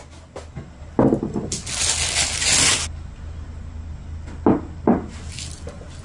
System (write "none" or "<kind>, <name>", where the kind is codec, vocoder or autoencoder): none